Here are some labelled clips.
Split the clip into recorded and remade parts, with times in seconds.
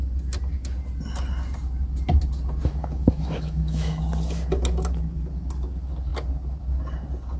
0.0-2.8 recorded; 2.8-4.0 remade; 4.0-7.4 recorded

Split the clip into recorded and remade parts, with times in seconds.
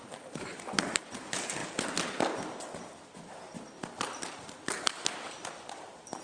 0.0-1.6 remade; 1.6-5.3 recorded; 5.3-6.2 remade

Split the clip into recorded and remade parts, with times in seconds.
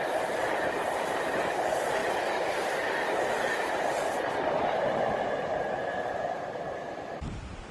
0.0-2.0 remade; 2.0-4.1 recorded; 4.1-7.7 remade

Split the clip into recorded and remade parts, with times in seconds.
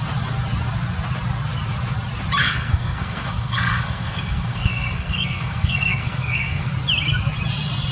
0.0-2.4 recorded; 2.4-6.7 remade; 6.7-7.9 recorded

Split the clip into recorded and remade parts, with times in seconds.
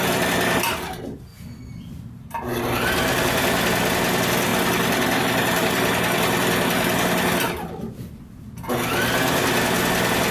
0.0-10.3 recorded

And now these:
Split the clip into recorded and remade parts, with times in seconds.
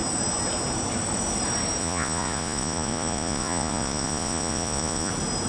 0.0-1.8 recorded; 1.8-5.1 remade; 5.1-5.5 recorded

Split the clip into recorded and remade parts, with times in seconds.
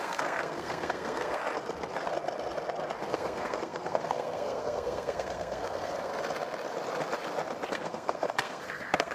0.0-1.4 remade; 1.4-3.1 recorded; 3.1-6.1 remade; 6.1-7.7 recorded; 7.7-9.1 remade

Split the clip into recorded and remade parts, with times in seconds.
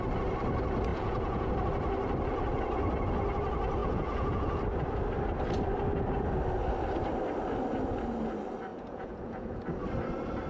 0.0-0.9 recorded; 0.9-1.5 remade; 1.5-3.8 recorded; 3.8-4.6 remade; 4.6-8.7 recorded; 8.7-9.6 remade; 9.6-10.5 recorded